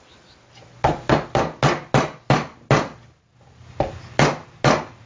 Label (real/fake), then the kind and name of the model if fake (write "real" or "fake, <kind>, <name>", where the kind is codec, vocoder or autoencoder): real